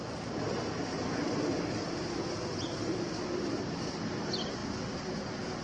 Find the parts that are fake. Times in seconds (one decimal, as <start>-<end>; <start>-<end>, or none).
none